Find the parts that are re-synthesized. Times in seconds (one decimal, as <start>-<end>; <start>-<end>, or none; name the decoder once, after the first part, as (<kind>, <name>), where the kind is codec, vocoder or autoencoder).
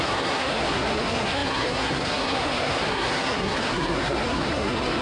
0.0-5.0 (codec, SNAC)